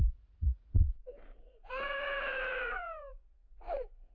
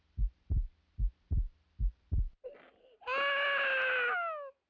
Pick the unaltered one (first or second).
second